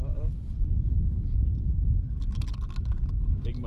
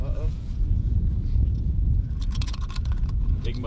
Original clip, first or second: first